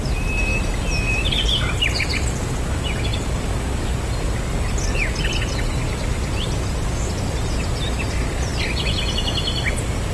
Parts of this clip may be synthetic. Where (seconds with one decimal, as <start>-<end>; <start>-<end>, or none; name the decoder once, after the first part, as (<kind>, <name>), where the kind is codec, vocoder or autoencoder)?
none

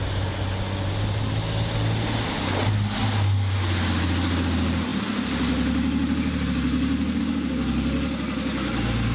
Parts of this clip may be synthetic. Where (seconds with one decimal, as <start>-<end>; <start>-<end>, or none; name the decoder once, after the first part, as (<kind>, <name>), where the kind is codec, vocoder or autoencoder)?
none